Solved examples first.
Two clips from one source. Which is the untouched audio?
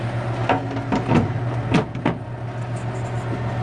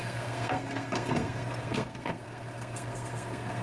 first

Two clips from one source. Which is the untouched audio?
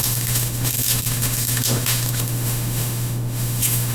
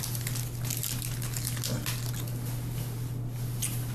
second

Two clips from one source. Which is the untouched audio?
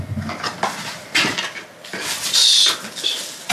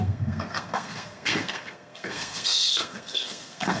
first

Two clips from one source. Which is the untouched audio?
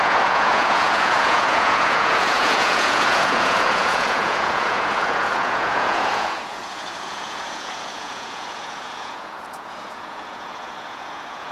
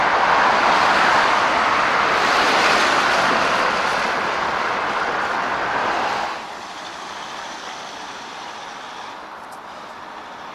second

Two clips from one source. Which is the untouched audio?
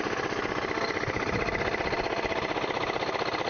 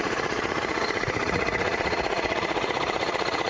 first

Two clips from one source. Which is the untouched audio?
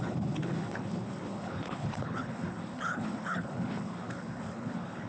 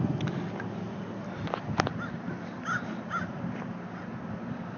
second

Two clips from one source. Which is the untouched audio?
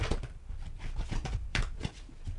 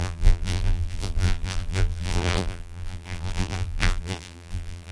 first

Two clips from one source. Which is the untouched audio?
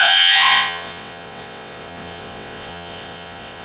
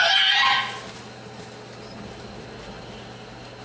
second